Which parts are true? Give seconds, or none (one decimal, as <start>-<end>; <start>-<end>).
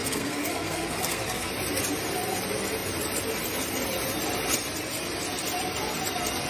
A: 1.5-6.5